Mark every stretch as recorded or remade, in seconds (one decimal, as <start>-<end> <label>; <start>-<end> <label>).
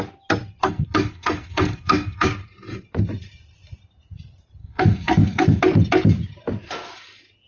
0.0-0.6 recorded; 0.6-2.3 remade; 2.3-4.6 recorded; 4.6-5.6 remade; 5.6-7.5 recorded